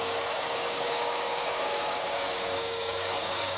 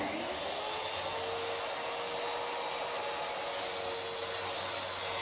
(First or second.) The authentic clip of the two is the second